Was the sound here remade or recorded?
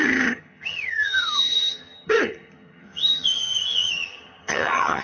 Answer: remade